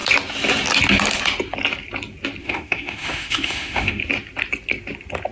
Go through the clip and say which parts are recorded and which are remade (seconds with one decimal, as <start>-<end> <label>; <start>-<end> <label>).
0.0-2.4 recorded; 2.4-4.0 remade; 4.0-5.3 recorded